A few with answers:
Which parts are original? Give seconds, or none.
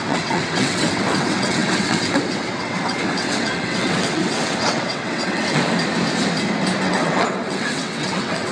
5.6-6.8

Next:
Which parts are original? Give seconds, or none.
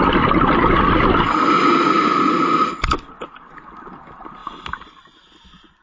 0.0-5.8